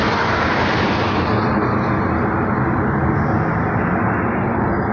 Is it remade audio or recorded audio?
recorded